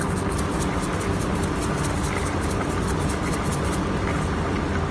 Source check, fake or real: real